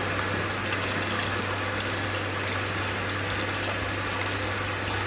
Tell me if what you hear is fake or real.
real